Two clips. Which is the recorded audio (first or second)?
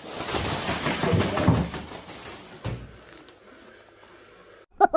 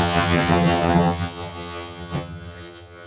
first